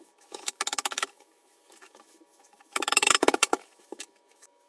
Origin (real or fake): fake